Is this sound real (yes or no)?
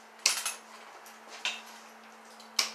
yes